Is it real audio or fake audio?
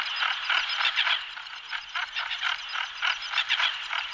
real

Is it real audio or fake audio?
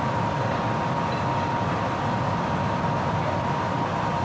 real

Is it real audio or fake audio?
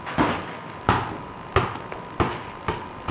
real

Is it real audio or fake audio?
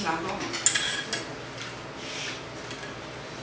real